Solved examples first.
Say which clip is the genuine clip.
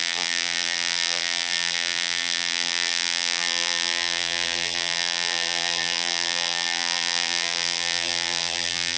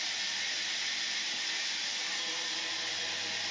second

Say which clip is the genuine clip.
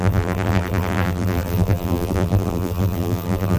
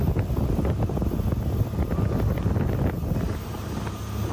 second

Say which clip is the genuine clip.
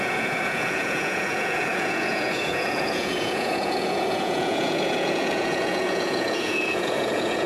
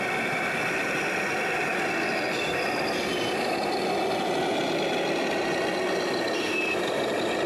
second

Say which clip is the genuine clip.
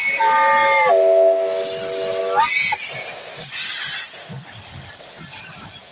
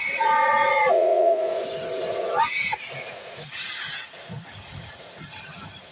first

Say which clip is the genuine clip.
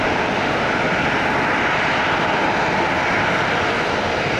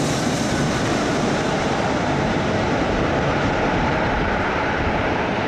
first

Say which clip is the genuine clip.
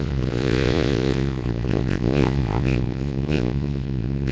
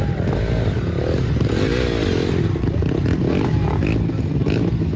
second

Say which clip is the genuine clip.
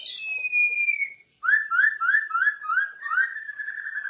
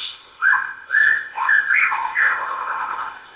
first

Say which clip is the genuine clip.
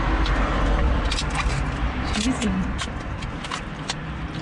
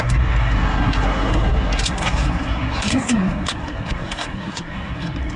first